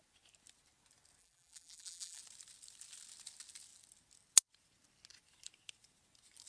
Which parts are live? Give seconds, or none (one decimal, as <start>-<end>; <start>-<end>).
0.0-1.2; 2.2-6.5